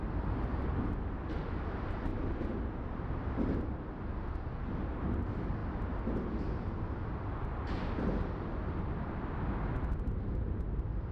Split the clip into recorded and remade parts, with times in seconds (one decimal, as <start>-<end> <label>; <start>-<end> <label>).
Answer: 0.0-11.1 recorded